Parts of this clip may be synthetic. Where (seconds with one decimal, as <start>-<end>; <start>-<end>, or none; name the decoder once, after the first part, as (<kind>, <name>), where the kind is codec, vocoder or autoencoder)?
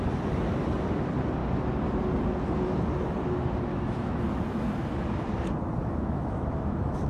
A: 3.7-4.2 (autoencoder, DAC-VAE); 5.8-7.1